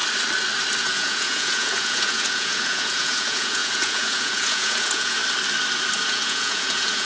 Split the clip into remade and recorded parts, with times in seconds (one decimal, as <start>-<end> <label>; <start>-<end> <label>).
0.0-0.8 recorded; 0.8-5.2 remade; 5.2-6.0 recorded; 6.0-7.0 remade